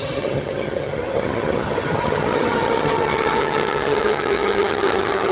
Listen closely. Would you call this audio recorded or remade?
remade